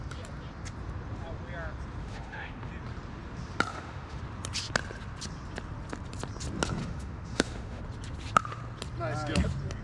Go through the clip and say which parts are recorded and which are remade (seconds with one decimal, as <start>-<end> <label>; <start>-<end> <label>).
0.0-2.0 recorded; 2.0-2.7 remade; 2.7-3.7 recorded; 3.7-4.2 remade; 4.2-6.8 recorded; 6.8-7.8 remade; 7.8-9.8 recorded